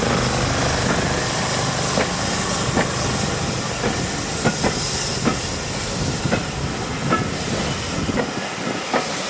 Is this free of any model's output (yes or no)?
yes